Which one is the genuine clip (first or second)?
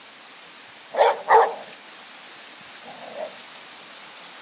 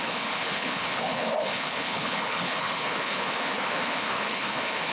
first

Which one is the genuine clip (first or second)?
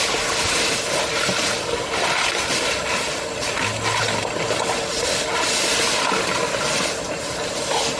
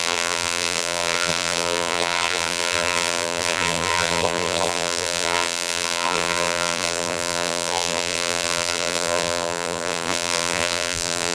first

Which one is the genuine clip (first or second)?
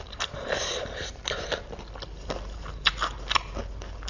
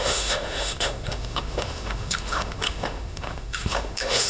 first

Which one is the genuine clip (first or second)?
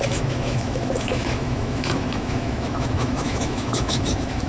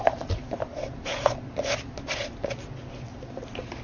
second